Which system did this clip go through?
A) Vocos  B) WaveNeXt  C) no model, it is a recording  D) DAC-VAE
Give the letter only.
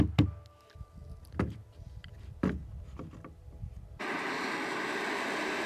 C